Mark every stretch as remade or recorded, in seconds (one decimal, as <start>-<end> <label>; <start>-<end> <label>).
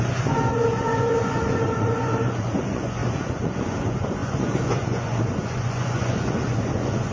0.0-7.1 remade